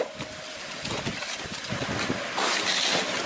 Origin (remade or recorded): recorded